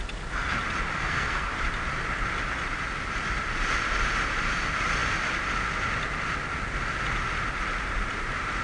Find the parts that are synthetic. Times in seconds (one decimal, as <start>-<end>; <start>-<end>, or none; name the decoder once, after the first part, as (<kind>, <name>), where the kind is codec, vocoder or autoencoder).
1.0-1.5 (codec, SNAC)